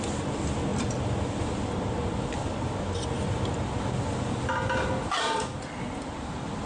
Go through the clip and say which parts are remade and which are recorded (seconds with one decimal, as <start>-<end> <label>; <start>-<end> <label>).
0.0-6.7 recorded